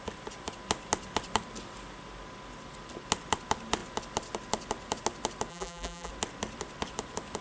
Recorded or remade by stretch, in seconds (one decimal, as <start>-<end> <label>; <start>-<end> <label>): 0.0-5.5 recorded; 5.5-6.1 remade; 6.1-7.4 recorded